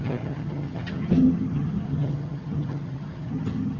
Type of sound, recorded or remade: remade